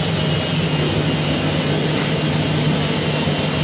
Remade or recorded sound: recorded